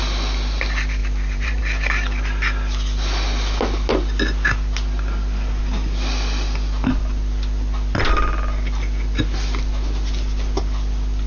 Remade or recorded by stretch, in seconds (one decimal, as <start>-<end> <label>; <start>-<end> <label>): 0.0-1.0 recorded; 1.0-1.6 remade; 1.6-11.3 recorded